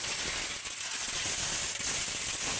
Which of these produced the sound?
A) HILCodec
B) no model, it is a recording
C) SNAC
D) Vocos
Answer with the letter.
B